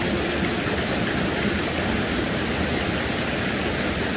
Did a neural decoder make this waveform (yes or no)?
no